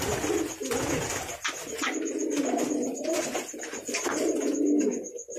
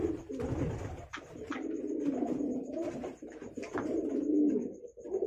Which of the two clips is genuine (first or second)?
first